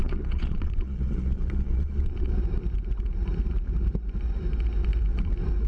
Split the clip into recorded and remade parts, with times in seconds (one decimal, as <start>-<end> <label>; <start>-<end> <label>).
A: 0.0-2.3 remade; 2.3-5.7 recorded